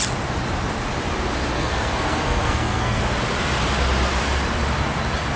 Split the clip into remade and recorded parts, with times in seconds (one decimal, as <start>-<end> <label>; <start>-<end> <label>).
0.0-1.5 recorded; 1.5-3.0 remade; 3.0-5.4 recorded